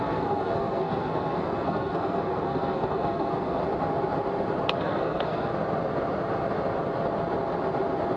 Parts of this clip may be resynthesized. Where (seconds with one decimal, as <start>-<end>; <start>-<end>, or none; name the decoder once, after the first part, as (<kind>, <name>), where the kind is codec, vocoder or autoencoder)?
0.0-3.6 (codec, SNAC); 4.8-5.5